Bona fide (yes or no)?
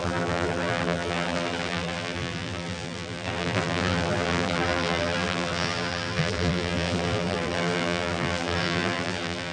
no